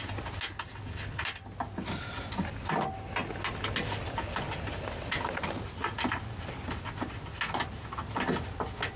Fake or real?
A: real